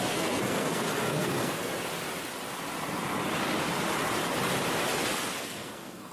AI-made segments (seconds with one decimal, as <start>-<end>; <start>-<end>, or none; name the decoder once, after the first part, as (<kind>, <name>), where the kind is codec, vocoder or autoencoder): 0.0-1.7 (codec, SNAC); 5.4-6.1